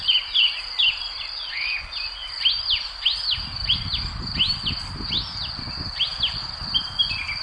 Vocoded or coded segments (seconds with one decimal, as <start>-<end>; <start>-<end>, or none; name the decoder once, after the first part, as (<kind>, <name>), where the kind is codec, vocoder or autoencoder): none